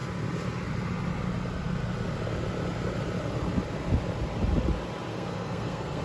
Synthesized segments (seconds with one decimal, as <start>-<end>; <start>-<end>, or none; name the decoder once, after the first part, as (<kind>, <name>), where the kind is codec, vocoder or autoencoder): 5.1-6.0 (codec, SNAC)